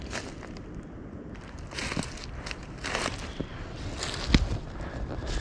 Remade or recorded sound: recorded